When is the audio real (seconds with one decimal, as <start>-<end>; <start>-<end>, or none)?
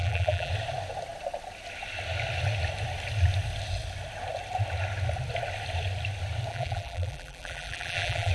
0.5-6.5